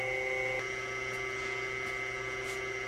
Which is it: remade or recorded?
recorded